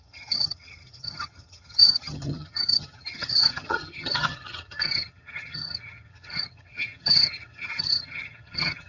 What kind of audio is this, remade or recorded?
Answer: remade